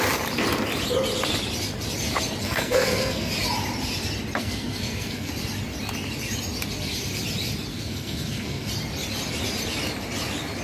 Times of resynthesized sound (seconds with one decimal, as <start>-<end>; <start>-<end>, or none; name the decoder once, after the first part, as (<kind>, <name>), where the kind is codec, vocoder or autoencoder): 2.4-3.3 (codec, SNAC); 4.4-5.3; 7.7-8.7